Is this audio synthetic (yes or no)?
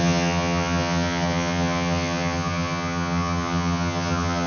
yes